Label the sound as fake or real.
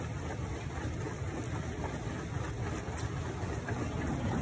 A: real